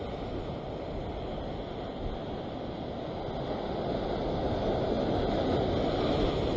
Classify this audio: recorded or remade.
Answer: recorded